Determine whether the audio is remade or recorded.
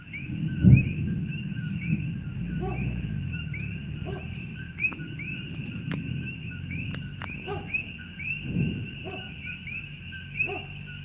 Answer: remade